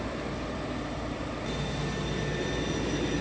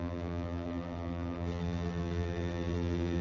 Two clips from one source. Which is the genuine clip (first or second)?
first